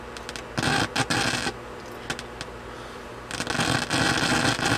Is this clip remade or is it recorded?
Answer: recorded